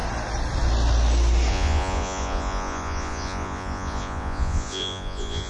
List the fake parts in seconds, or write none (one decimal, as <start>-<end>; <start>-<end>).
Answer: 1.5-5.5